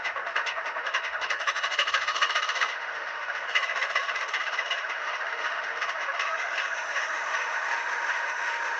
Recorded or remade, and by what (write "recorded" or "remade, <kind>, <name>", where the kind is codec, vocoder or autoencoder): remade, autoencoder, DAC-VAE